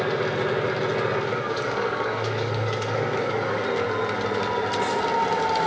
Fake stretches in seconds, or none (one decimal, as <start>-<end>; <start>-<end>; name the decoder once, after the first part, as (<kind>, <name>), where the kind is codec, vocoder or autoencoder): 1.3-3.6 (codec, DAC)